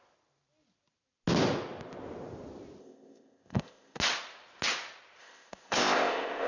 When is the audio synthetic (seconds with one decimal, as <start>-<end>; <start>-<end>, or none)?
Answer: 2.8-4.0; 5.2-6.5